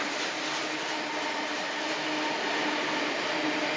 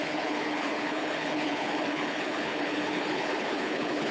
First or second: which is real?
first